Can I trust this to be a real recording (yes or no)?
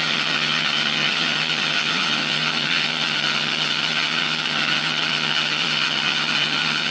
no